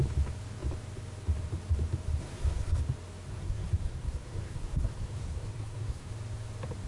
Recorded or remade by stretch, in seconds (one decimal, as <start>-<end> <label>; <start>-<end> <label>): 0.0-2.2 recorded; 2.2-2.8 remade; 2.8-3.3 recorded; 3.3-6.1 remade; 6.1-6.9 recorded